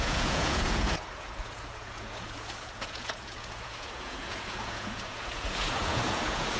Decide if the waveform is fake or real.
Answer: fake